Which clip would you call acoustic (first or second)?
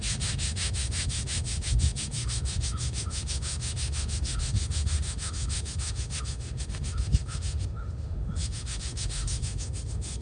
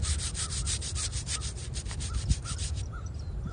second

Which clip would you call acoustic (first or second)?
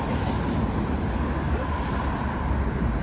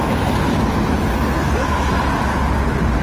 second